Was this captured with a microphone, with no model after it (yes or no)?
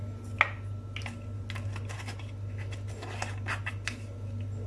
yes